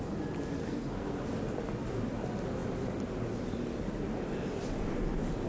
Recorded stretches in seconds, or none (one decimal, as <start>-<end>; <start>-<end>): 0.0-0.6; 1.2-5.5